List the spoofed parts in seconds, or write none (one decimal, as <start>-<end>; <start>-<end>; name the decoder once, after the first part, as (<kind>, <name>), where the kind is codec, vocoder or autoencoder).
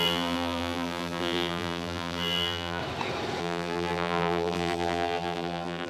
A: 0.0-2.8 (vocoder, BigVGAN v2); 3.4-5.9